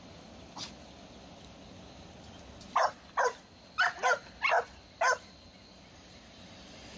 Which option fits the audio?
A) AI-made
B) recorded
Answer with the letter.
B